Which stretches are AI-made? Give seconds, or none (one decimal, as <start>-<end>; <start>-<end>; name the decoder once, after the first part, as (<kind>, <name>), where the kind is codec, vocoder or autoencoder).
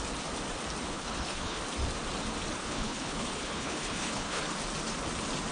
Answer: 0.9-1.6 (codec, HILCodec); 2.6-4.4